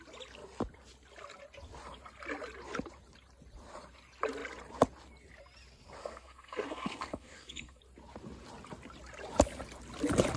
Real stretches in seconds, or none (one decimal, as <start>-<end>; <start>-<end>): 0.0-6.0; 7.8-10.4